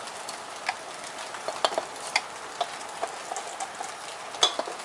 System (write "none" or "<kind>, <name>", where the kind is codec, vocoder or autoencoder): none